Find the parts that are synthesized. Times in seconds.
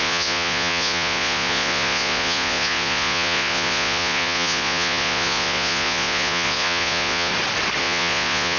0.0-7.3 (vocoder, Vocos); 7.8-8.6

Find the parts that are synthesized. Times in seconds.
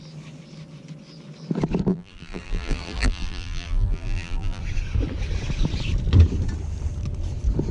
1.9-4.6 (vocoder, BigVGAN v2)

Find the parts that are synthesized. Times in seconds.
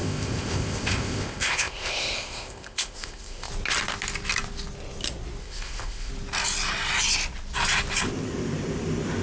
0.0-3.5 (codec, ZipCodec); 5.4-6.1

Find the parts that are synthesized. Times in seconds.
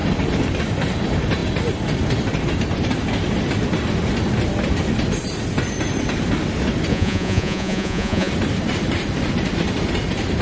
6.9-8.3 (vocoder, Vocos)